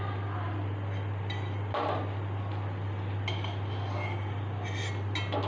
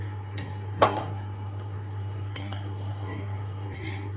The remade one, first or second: second